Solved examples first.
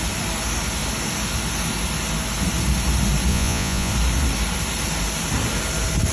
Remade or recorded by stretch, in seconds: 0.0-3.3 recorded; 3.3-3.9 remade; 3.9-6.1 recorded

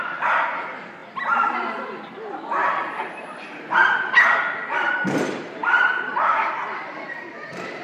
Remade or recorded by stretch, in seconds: 0.0-7.8 remade

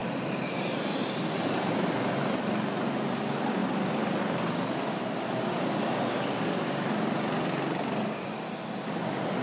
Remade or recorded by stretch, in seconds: 0.0-0.9 remade; 0.9-9.4 recorded

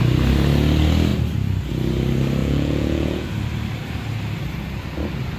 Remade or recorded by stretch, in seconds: 0.0-2.4 recorded; 2.4-3.3 remade; 3.3-5.4 recorded